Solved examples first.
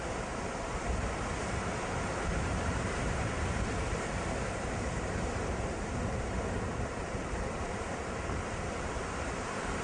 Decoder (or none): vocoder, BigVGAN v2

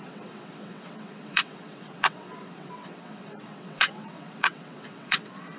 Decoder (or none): vocoder, WaveNeXt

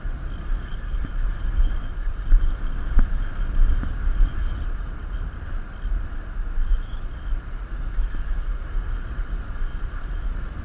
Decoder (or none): none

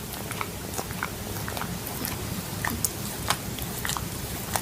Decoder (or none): none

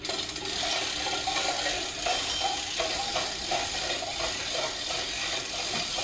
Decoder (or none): none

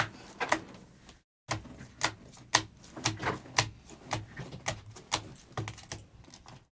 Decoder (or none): none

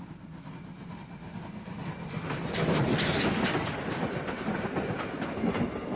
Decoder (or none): none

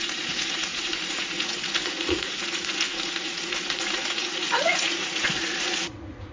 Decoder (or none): vocoder, Vocos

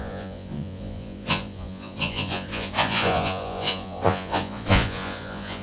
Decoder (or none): vocoder, Vocos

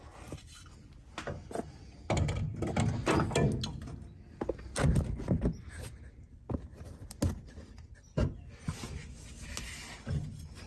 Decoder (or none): none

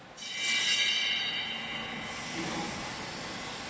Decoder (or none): none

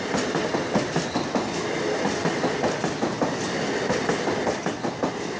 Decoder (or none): none